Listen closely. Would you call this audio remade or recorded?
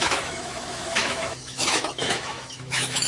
remade